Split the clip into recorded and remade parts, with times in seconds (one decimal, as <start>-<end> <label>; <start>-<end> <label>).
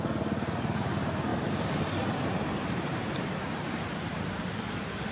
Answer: 0.0-1.3 recorded; 1.3-4.4 remade; 4.4-5.1 recorded